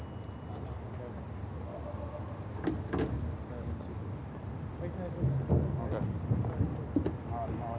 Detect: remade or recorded recorded